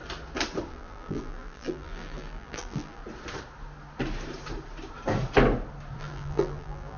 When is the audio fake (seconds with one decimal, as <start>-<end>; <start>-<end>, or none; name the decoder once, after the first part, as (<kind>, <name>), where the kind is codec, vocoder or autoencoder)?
0.7-3.0 (vocoder, BigVGAN v2); 6.0-7.0

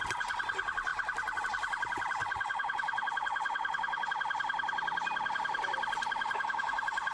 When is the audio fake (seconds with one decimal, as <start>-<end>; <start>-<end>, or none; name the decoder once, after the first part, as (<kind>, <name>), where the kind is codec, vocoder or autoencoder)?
2.2-4.1 (vocoder, WaveNeXt)

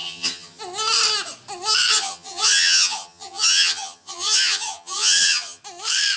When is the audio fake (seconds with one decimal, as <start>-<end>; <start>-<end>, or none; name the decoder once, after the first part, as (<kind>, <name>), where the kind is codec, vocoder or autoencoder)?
0.0-0.6 (vocoder, HiFi-GAN); 1.9-5.6